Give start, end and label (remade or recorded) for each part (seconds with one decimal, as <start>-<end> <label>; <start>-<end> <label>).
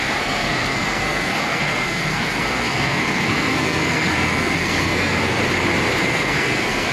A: 0.0-5.4 remade; 5.4-6.0 recorded; 6.0-6.9 remade